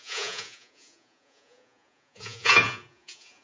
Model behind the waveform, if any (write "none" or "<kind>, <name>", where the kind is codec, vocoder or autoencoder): vocoder, Vocos